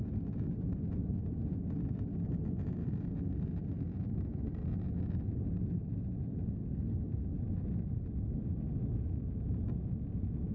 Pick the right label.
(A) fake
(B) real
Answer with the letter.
B